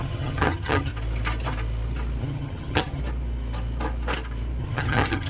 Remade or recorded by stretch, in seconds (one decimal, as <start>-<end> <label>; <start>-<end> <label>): 0.0-0.9 remade; 0.9-2.2 recorded; 2.2-3.0 remade; 3.0-4.6 recorded; 4.6-5.3 remade